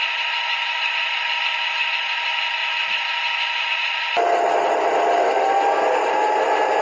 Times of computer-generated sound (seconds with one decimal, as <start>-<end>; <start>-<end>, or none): none